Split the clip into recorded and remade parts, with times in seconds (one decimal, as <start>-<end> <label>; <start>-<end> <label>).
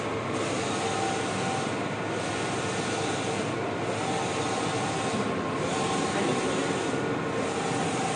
0.0-8.2 recorded